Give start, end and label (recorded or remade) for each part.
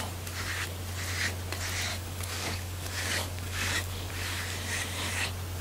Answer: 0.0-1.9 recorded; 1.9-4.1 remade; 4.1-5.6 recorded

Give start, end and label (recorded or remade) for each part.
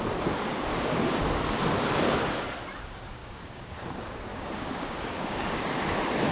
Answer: 0.0-0.7 recorded; 0.7-1.2 remade; 1.2-3.2 recorded; 3.2-3.7 remade; 3.7-4.3 recorded; 4.3-5.7 remade; 5.7-6.3 recorded